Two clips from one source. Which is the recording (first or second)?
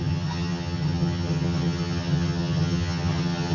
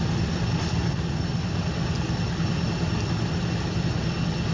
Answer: second